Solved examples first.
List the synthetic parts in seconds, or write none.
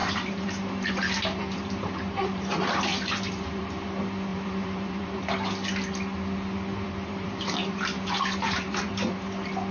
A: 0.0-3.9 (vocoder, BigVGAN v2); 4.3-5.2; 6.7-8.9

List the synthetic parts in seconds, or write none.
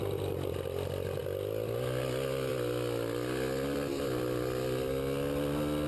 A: none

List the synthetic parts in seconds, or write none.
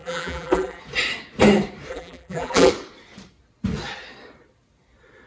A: 0.0-0.8 (vocoder, BigVGAN v2); 1.9-2.7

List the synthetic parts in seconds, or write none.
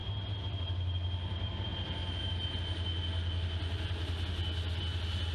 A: none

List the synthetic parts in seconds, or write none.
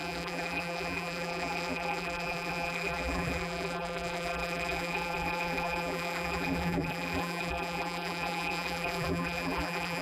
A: 0.0-10.0 (vocoder, BigVGAN v2)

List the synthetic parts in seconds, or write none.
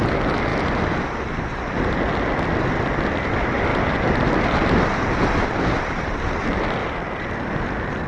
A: 3.7-5.3 (vocoder, BigVGAN v2)